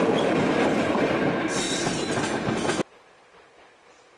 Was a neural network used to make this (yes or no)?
no